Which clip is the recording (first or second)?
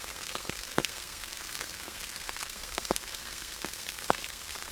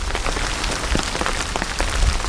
second